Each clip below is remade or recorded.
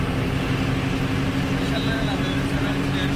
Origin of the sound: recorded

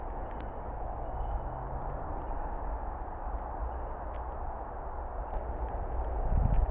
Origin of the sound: recorded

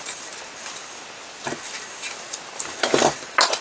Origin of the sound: recorded